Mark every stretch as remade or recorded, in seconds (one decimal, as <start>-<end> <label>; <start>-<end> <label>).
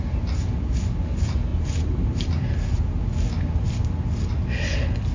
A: 0.0-5.1 recorded